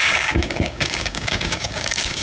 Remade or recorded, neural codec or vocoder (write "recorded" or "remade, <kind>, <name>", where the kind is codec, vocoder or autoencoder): remade, codec, DAC